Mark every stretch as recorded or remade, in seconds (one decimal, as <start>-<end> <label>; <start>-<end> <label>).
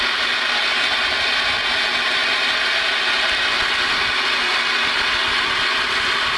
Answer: 0.0-6.4 recorded